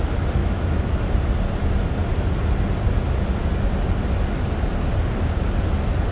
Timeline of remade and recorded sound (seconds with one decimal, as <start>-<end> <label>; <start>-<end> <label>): 0.0-0.4 recorded; 0.4-1.0 remade; 1.0-6.1 recorded